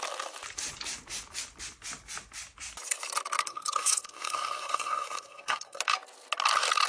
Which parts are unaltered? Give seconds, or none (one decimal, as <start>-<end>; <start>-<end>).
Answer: 0.0-3.4; 5.8-6.9